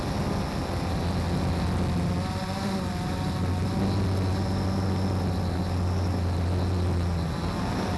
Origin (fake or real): real